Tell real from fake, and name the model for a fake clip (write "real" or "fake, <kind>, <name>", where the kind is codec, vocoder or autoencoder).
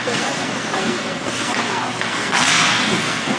fake, codec, SNAC